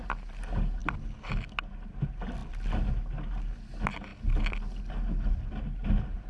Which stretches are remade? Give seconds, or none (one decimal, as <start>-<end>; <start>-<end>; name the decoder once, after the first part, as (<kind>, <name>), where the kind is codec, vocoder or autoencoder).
none

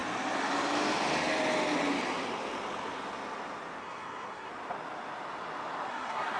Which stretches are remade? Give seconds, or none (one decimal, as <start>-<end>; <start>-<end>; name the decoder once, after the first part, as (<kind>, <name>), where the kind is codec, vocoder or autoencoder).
3.8-4.5 (codec, SNAC); 5.9-6.4

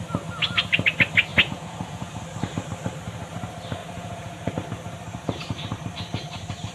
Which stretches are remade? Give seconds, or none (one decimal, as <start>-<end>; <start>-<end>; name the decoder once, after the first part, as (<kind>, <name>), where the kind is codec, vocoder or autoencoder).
1.3-2.2 (vocoder, Vocos); 3.8-4.5

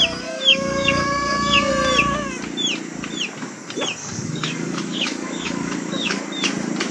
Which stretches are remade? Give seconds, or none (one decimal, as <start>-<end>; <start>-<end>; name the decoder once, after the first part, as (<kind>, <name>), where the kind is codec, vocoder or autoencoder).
0.5-1.7 (codec, DAC); 4.0-6.2

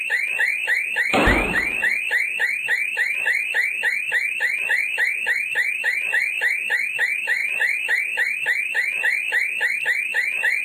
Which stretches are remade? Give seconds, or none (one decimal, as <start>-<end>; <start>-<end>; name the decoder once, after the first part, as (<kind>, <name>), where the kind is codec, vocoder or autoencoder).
none

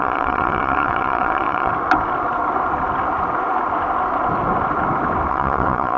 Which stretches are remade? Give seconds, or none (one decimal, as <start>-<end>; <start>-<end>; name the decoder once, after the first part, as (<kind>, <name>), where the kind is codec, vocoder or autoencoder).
0.0-1.7 (vocoder, WaveNeXt); 5.3-6.0

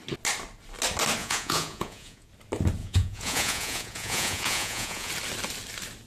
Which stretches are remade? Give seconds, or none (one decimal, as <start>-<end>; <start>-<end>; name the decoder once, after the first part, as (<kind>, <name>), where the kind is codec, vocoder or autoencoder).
1.2-2.3 (vocoder, Vocos); 2.8-5.1